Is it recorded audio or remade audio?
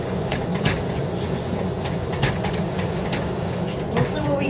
remade